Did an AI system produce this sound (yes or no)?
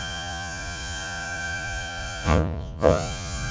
yes